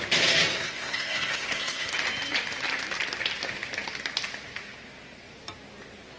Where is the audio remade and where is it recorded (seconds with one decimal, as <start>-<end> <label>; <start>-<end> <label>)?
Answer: 0.0-0.5 recorded; 0.5-1.9 remade; 1.9-6.2 recorded